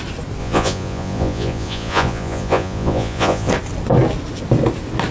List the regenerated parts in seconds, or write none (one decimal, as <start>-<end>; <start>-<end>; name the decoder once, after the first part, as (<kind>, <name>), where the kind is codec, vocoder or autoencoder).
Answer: 0.4-3.5 (vocoder, Vocos)